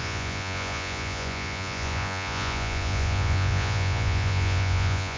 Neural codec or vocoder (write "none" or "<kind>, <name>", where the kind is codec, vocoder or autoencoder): vocoder, Vocos